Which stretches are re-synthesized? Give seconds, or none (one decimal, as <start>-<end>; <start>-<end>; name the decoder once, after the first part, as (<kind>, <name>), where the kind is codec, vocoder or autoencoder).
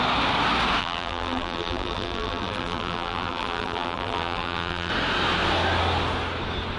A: 0.8-4.9 (vocoder, BigVGAN v2)